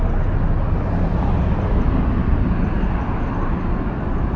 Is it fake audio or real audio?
real